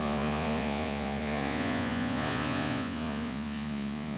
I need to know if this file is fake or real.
fake